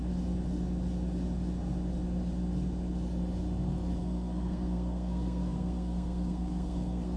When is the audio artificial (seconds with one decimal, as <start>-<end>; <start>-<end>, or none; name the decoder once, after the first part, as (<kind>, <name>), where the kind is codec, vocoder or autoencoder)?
4.0-7.2 (codec, SNAC)